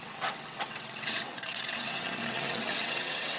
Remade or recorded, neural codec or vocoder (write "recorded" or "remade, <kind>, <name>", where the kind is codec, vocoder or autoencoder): remade, vocoder, WaveNeXt